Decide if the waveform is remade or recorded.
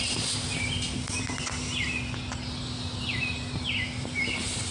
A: recorded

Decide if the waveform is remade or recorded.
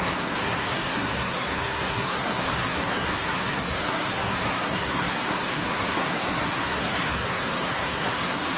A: remade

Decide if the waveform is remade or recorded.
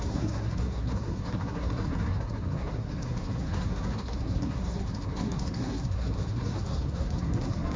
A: remade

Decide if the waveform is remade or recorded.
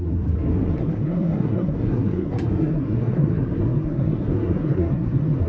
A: remade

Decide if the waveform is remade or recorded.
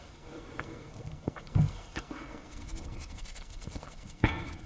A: remade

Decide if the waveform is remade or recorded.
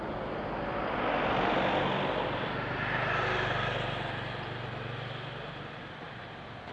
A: recorded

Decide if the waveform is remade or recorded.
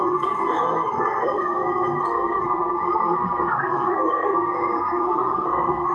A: remade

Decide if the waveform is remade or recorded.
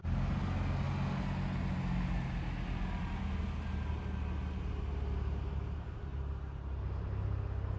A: recorded